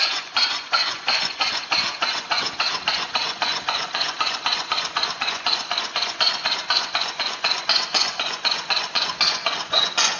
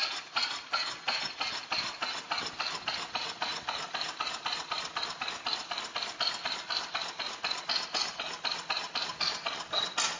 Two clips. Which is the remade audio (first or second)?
first